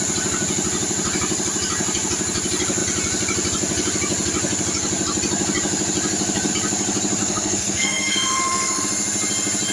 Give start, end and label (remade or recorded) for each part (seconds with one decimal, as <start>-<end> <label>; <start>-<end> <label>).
0.0-7.2 recorded; 7.2-8.8 remade; 8.8-9.7 recorded